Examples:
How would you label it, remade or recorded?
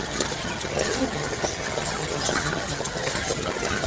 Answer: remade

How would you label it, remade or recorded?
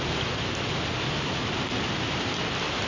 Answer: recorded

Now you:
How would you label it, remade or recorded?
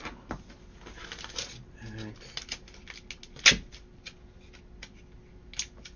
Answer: recorded